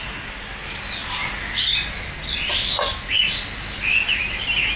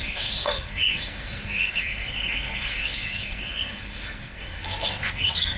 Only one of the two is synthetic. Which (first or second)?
second